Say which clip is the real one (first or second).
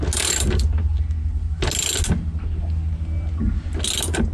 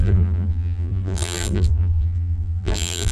first